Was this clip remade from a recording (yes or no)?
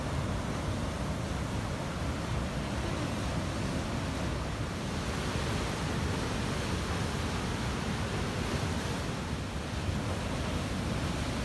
no